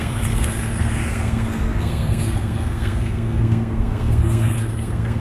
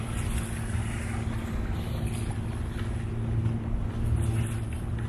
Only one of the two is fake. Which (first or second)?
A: first